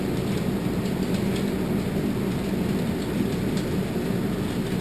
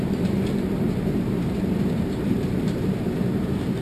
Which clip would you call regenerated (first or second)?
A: second